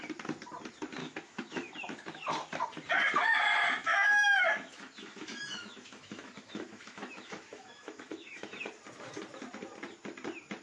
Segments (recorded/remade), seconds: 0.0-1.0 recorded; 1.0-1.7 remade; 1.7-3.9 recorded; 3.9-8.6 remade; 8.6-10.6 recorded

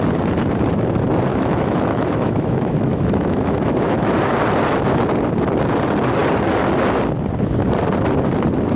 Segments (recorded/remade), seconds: 0.0-1.3 recorded; 1.3-4.2 remade; 4.2-8.8 recorded

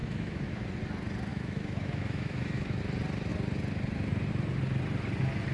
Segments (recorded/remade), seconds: 0.0-0.6 remade; 0.6-1.3 recorded; 1.3-2.8 remade; 2.8-5.5 recorded

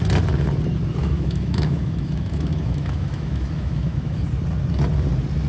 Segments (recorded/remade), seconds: 0.0-1.0 recorded; 1.0-4.2 remade; 4.2-5.5 recorded

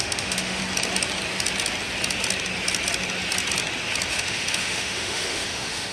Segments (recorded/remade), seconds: 0.0-0.6 remade; 0.6-4.1 recorded; 4.1-5.9 remade

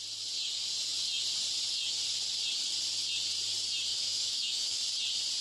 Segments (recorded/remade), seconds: 0.0-3.9 recorded; 3.9-4.8 remade; 4.8-5.4 recorded

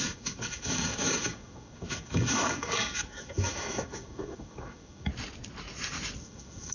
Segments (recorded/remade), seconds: 0.0-5.1 remade; 5.1-6.2 recorded; 6.2-6.7 remade